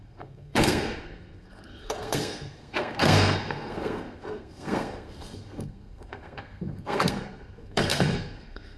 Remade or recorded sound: remade